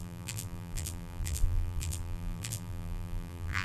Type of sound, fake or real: fake